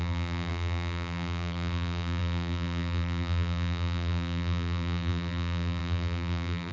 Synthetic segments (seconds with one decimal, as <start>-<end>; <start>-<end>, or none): 0.0-6.7